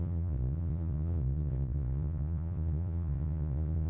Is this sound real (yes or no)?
no